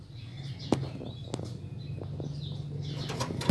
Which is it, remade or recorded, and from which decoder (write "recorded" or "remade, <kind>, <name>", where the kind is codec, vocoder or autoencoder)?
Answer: recorded